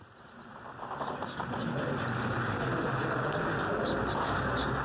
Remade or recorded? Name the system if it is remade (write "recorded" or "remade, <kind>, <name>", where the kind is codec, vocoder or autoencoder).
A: recorded